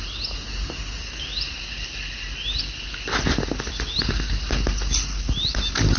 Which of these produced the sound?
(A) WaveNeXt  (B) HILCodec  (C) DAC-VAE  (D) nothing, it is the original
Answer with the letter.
D